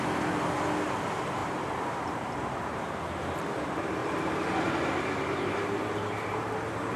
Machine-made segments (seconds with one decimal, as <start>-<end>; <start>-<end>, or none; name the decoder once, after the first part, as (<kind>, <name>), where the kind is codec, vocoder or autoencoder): 1.4-3.2 (vocoder, BigVGAN v2); 4.0-6.6